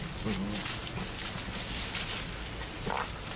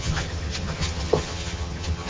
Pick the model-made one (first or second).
second